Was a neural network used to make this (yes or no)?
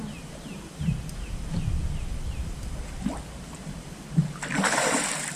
no